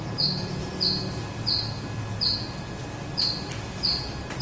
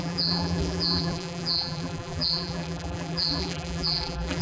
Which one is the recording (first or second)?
first